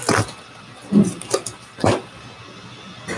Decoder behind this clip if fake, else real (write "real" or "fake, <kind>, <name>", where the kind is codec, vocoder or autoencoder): real